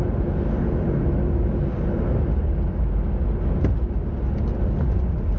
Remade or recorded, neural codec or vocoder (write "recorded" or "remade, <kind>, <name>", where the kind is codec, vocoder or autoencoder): recorded